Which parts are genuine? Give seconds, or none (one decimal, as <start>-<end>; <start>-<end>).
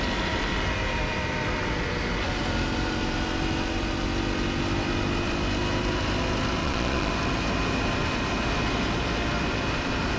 0.0-6.6; 7.1-10.2